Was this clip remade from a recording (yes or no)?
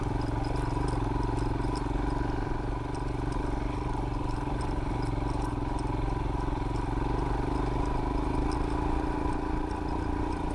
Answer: no